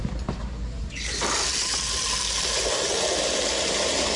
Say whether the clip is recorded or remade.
recorded